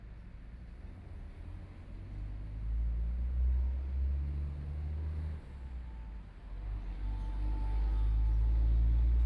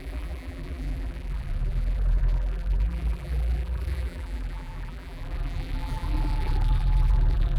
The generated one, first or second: second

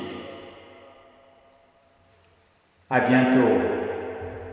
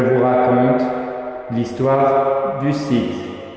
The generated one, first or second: first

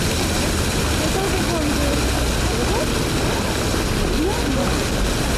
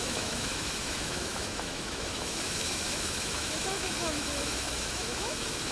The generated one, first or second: second